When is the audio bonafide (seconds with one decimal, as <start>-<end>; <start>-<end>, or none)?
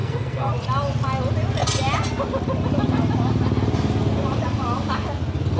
0.5-5.6